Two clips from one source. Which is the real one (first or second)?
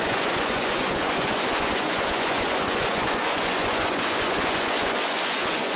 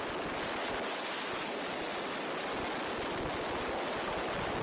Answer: second